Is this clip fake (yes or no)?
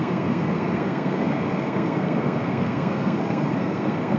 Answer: yes